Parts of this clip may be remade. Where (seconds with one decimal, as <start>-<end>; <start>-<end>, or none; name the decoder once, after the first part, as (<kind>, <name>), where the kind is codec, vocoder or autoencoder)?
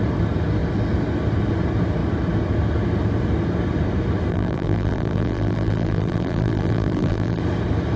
4.3-7.4 (vocoder, BigVGAN v2)